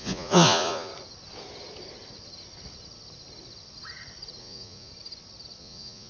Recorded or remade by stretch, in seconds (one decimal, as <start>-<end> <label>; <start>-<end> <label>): 0.0-0.9 remade; 0.9-4.4 recorded; 4.4-4.9 remade; 4.9-5.6 recorded; 5.6-6.1 remade